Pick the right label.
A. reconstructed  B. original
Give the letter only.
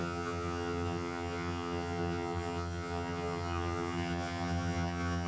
A